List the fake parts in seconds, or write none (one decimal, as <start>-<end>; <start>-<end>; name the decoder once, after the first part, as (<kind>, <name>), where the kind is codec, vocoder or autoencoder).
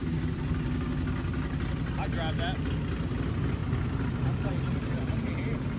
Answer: none